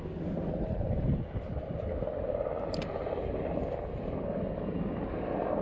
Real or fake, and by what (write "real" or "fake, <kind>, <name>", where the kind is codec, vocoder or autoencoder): real